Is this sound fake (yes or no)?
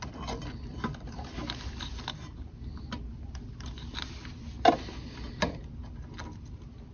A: no